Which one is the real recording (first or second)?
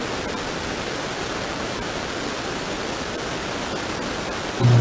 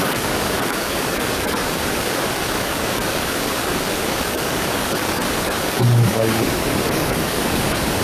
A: first